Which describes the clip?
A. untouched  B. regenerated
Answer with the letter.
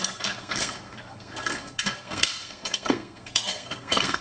B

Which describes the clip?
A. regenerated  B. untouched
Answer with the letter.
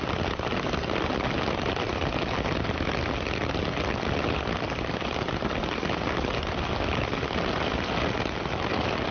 B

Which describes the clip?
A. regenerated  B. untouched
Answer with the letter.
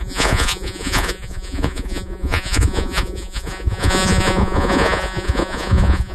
A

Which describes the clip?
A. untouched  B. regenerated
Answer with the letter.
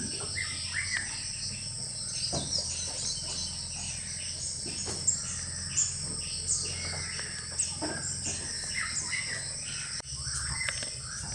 A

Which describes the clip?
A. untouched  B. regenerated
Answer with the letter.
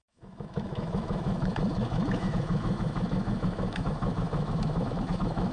B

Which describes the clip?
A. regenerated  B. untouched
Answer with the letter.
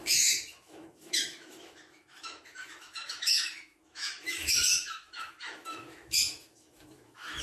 A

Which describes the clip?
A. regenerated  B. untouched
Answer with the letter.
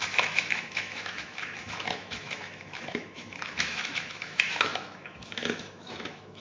A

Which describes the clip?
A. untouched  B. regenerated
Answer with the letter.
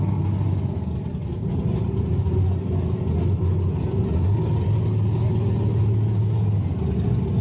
A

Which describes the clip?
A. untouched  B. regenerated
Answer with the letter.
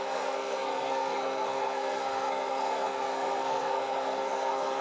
B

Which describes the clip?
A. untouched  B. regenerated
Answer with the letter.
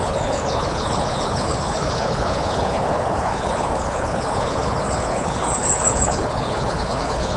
B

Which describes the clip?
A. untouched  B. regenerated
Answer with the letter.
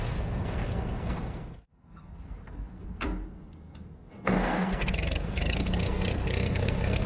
B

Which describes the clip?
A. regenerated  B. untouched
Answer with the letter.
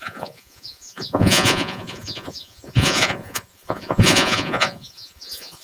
A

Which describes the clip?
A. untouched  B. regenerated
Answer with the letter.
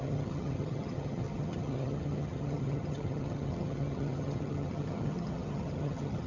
B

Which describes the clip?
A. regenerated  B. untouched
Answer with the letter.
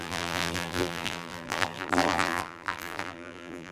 A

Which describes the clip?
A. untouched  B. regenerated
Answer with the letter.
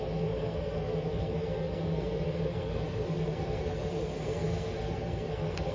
B